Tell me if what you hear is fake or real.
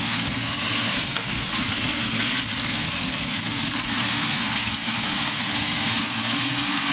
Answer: fake